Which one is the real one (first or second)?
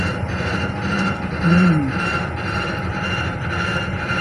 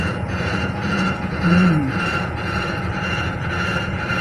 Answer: first